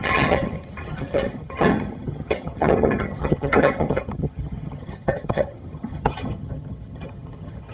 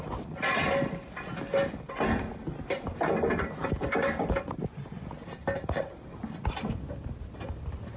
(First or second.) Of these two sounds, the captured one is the second